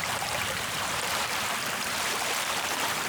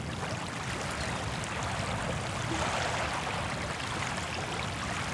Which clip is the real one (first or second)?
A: second